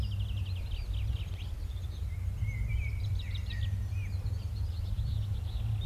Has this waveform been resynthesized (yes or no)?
no